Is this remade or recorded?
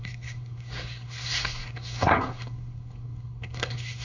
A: remade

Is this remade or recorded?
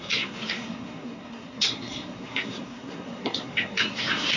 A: remade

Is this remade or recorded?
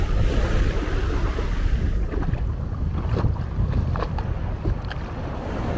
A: recorded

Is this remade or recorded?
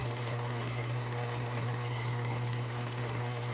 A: remade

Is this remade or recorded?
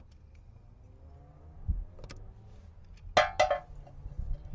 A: recorded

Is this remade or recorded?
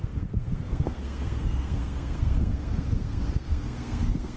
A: remade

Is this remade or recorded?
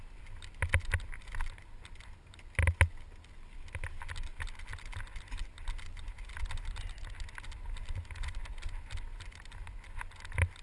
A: recorded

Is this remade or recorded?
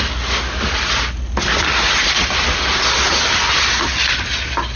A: recorded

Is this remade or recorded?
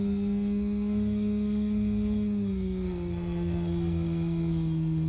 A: remade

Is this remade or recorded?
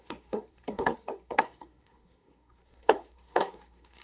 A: remade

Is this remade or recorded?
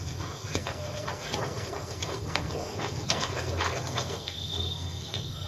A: remade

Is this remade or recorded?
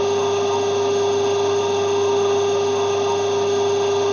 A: recorded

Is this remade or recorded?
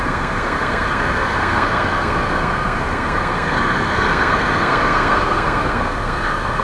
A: remade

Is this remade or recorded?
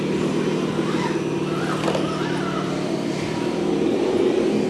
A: recorded